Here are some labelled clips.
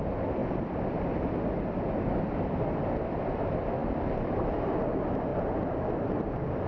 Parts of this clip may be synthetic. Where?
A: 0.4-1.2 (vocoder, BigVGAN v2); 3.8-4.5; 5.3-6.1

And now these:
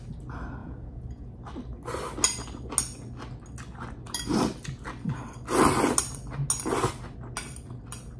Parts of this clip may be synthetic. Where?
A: 0.6-1.3 (vocoder, Vocos)

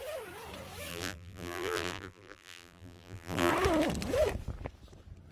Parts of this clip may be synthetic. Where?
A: 0.9-3.5 (vocoder, BigVGAN v2)

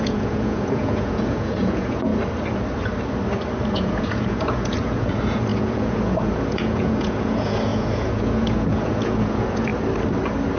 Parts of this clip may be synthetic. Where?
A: 0.0-2.1 (vocoder, Vocos); 3.7-9.7

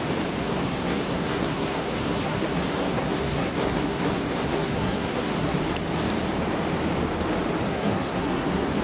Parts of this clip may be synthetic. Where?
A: 0.4-5.6 (codec, SNAC); 7.7-8.8